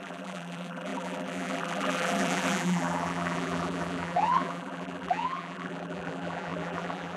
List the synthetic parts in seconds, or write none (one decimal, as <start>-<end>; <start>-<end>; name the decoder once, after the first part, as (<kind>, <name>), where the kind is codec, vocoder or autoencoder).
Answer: 0.0-7.2 (vocoder, BigVGAN v2)